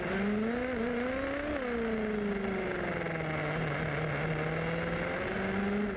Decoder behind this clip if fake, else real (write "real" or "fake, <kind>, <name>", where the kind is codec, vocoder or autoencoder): real